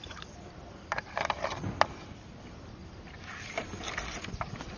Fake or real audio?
real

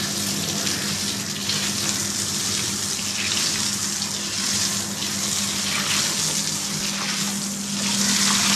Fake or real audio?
real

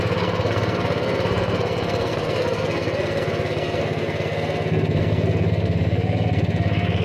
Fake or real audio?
fake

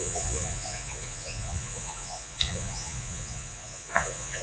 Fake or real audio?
fake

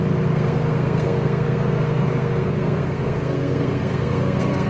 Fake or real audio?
fake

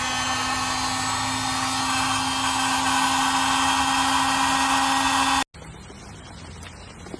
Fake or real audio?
real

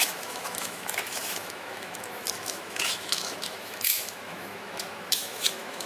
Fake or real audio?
fake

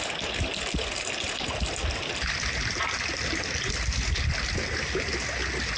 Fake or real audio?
real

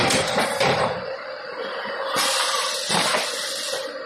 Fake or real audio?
fake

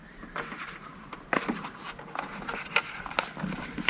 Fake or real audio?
real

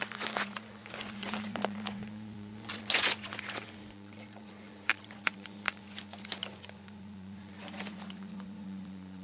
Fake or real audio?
fake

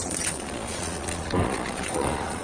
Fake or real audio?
fake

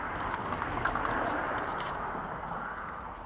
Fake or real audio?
real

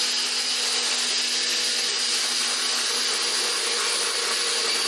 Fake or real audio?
real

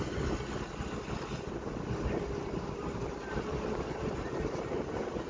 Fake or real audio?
real